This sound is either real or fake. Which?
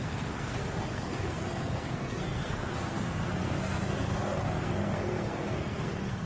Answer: fake